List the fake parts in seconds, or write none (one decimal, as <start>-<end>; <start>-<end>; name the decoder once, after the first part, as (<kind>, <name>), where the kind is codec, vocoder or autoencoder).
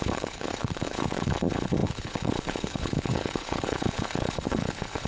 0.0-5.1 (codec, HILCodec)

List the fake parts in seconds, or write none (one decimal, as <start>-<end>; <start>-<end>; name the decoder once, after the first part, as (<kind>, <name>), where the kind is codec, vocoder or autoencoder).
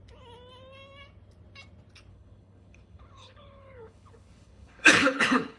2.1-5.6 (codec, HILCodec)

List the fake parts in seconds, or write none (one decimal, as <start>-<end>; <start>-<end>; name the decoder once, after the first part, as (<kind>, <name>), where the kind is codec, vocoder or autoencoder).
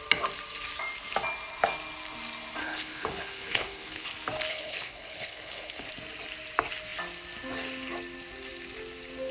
2.6-4.1 (codec, HILCodec); 4.5-5.9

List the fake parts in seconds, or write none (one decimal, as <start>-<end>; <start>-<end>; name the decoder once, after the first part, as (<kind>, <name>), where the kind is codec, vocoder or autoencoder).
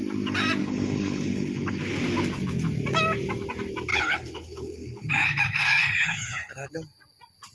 0.6-1.8 (codec, HILCodec); 3.9-5.1; 5.6-6.7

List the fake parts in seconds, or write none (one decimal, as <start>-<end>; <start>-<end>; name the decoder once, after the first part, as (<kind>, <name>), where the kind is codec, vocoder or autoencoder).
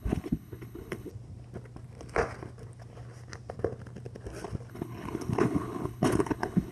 0.0-1.1 (codec, HILCodec); 4.7-6.7